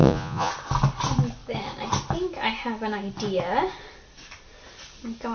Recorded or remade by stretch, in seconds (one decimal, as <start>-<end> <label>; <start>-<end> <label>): 0.0-0.5 remade; 0.5-5.3 recorded